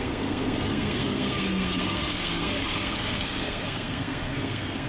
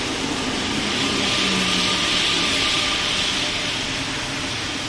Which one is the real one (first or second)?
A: second